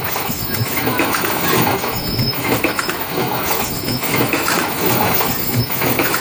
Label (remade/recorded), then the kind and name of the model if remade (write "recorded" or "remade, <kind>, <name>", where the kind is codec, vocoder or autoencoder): remade, autoencoder, DAC-VAE